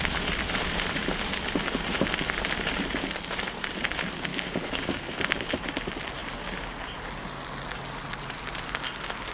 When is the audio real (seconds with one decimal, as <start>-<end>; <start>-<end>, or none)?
0.0-4.3; 5.0-9.3